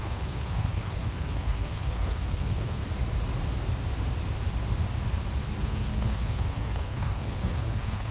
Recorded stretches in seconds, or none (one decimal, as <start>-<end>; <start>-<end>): 2.8-5.6